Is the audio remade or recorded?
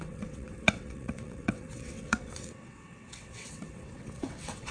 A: remade